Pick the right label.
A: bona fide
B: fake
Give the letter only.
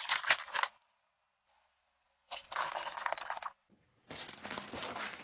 A